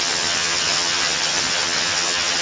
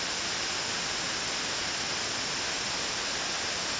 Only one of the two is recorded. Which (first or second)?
second